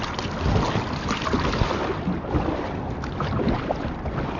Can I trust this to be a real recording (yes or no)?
yes